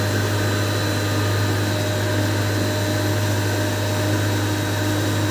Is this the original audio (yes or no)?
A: yes